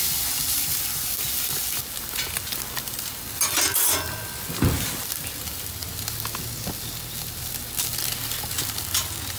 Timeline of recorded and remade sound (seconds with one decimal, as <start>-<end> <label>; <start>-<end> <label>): 0.0-9.4 recorded